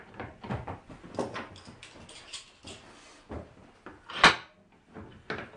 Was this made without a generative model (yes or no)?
yes